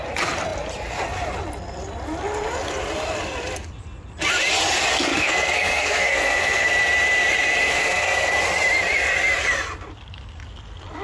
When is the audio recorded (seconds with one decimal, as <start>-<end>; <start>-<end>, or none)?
0.0-5.1; 6.7-7.7; 8.3-11.0